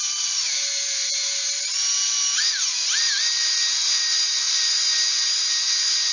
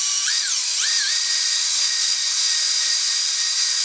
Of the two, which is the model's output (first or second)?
second